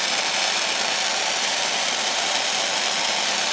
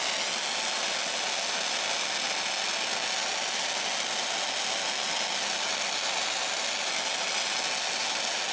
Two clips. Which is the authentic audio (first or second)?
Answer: second